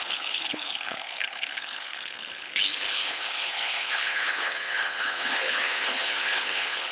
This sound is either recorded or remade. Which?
remade